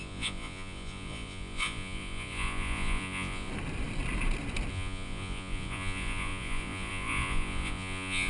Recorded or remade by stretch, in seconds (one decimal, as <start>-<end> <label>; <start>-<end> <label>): 0.0-3.5 remade; 3.5-4.7 recorded; 4.7-8.3 remade